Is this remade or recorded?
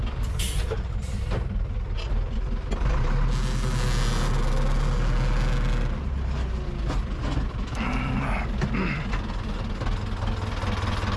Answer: recorded